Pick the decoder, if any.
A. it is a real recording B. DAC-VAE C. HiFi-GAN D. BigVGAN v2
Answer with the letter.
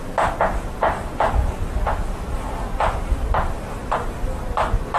D